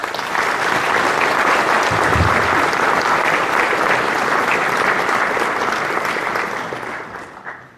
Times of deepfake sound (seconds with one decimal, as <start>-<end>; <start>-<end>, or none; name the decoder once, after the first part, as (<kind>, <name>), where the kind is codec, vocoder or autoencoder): none